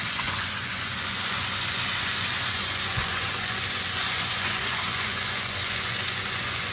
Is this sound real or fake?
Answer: fake